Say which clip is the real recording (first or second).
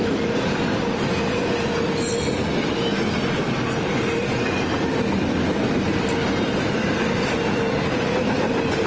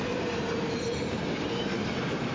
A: first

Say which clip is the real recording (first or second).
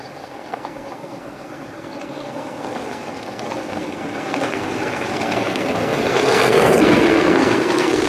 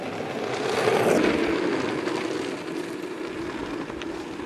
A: second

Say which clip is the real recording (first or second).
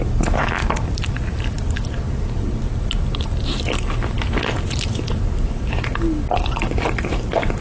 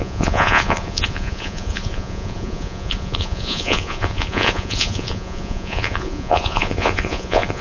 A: first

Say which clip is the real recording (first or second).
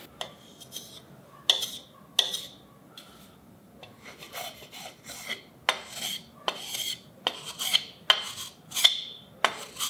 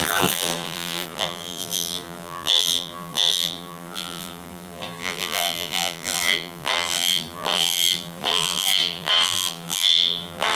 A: first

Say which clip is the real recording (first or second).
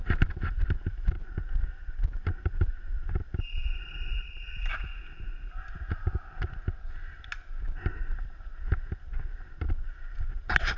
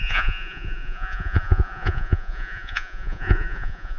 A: first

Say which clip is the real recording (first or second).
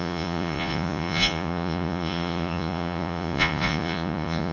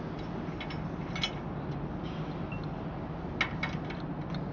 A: second